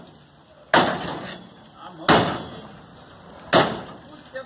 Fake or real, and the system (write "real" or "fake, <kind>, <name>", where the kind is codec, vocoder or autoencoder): real